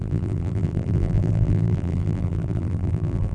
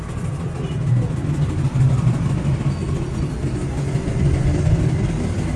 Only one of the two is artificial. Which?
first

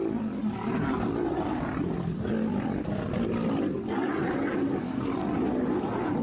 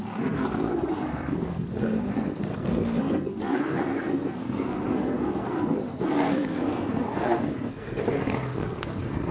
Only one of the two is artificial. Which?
second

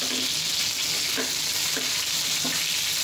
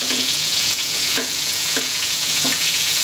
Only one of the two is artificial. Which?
second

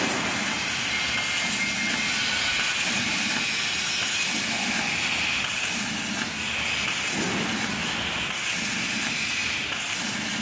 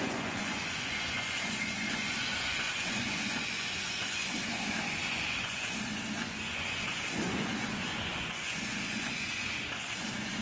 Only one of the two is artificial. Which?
second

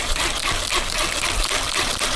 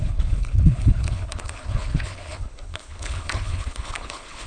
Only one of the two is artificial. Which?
second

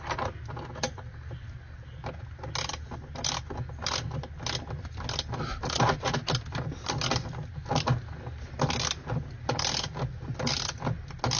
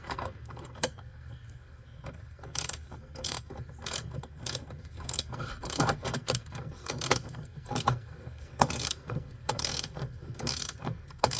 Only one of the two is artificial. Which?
second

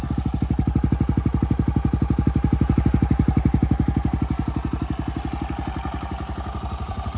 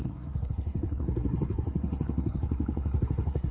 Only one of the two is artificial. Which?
second